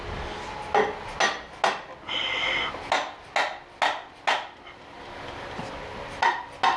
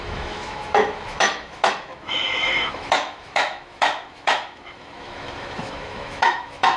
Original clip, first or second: first